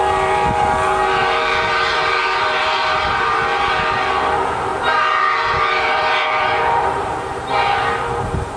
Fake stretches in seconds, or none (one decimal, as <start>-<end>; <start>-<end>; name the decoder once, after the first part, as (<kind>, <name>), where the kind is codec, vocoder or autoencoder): 1.2-3.4 (vocoder, BigVGAN v2); 4.7-7.5